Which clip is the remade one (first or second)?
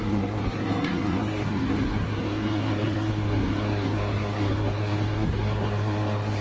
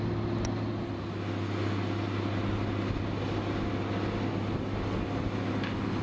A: first